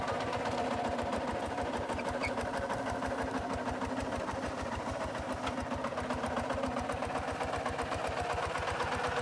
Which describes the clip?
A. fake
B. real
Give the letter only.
A